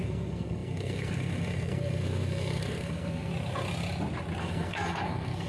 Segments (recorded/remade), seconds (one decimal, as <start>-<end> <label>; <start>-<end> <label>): 0.0-3.3 remade; 3.3-4.4 recorded; 4.4-5.5 remade

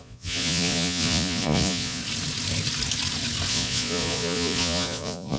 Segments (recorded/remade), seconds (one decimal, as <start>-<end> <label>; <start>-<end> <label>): 0.0-2.0 remade; 2.0-3.5 recorded; 3.5-5.4 remade